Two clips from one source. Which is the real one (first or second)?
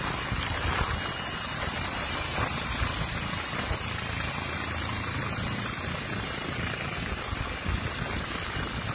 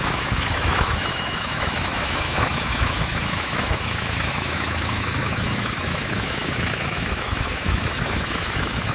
first